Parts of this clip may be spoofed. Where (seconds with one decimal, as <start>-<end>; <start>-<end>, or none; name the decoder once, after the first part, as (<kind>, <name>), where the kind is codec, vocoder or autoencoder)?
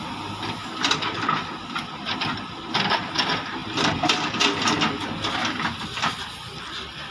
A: none